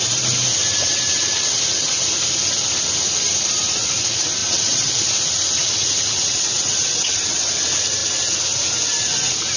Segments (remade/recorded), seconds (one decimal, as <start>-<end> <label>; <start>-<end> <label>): 0.0-0.6 recorded; 0.6-1.9 remade; 1.9-4.4 recorded; 4.4-5.0 remade; 5.0-5.6 recorded; 5.6-7.5 remade; 7.5-9.6 recorded